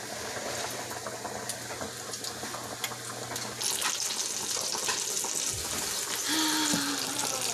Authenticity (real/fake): real